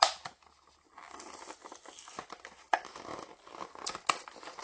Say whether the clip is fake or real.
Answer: real